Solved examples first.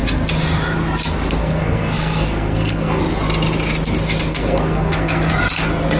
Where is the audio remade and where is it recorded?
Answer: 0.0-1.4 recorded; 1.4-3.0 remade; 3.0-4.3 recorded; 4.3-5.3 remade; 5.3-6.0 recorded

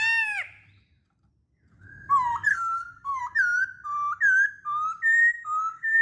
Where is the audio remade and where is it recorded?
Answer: 0.0-2.5 recorded; 2.5-3.2 remade; 3.2-5.2 recorded; 5.2-6.0 remade

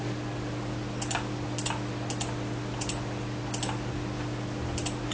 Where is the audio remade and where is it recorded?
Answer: 0.0-5.1 recorded

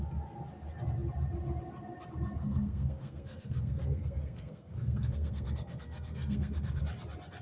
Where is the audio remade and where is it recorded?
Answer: 0.0-2.4 recorded; 2.4-6.8 remade; 6.8-7.4 recorded

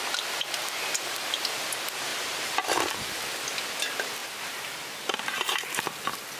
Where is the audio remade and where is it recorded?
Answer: 0.0-4.2 recorded; 4.2-5.8 remade; 5.8-6.4 recorded